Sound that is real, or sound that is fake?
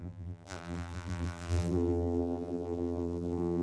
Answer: fake